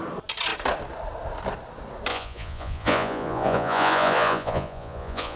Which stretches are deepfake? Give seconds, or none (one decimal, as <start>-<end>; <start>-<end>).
2.1-5.4